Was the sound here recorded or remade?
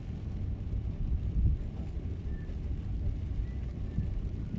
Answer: remade